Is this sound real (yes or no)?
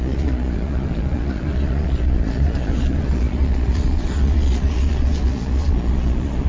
no